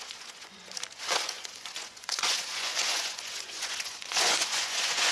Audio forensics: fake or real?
fake